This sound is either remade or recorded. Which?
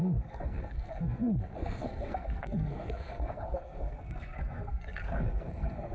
remade